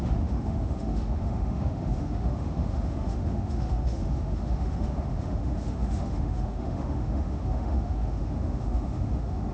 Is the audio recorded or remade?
remade